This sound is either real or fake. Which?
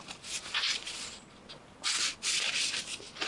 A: real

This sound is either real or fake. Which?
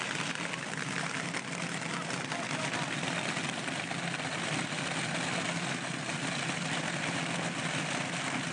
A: real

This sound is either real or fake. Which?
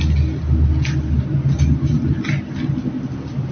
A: real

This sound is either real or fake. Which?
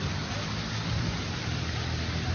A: real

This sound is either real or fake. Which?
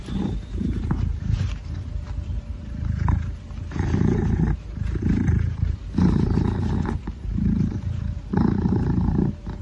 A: fake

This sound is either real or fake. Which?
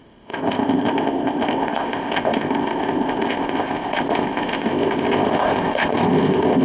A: fake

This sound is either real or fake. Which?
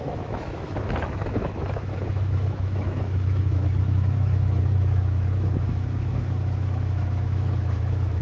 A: fake